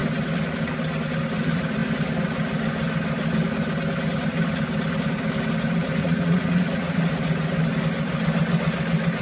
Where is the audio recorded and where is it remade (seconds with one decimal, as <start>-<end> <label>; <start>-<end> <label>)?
0.0-6.0 recorded; 6.0-7.0 remade; 7.0-9.2 recorded